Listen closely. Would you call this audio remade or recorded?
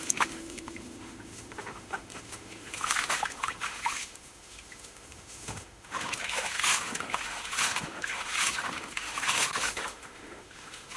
remade